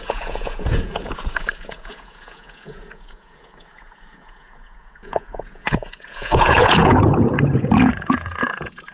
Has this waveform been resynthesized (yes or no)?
yes